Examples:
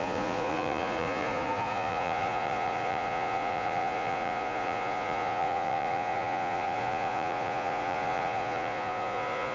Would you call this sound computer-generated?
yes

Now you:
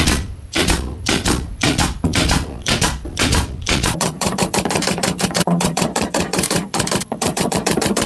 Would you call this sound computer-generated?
yes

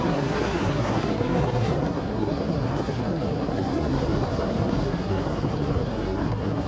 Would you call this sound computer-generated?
yes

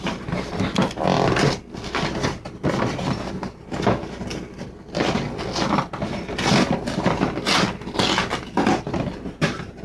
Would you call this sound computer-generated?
no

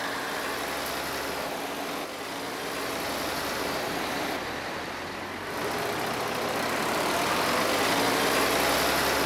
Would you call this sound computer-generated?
no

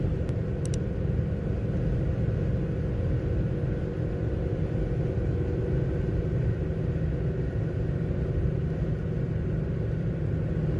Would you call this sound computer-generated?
no